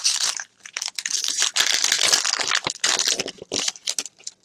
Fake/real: real